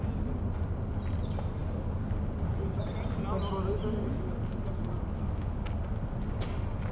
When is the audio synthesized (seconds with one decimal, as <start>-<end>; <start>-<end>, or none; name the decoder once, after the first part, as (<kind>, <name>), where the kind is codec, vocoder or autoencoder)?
none